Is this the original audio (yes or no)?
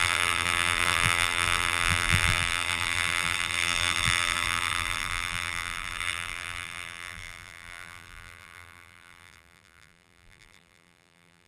no